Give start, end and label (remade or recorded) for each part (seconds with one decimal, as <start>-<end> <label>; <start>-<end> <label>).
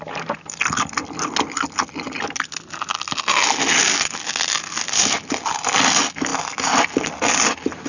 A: 0.0-7.9 recorded